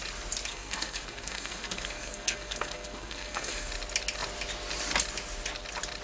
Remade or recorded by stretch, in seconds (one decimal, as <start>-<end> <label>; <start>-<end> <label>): 0.0-0.5 recorded; 0.5-3.7 remade; 3.7-6.0 recorded